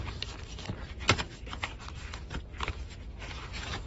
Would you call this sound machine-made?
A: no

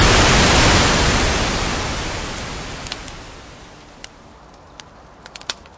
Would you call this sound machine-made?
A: no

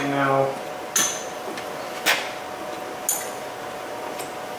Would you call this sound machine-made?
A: no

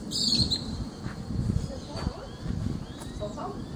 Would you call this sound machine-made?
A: yes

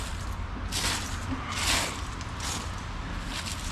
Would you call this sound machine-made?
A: no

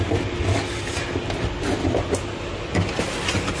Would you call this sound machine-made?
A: no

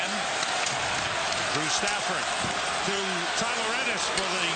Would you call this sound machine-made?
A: no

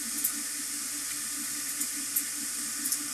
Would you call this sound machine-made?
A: no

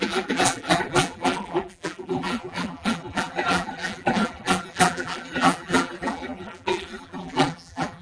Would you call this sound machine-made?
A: yes